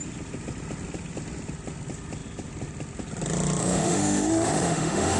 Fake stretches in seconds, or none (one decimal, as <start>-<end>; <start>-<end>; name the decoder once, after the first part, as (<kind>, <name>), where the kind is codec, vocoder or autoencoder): 3.6-5.2 (autoencoder, DAC-VAE)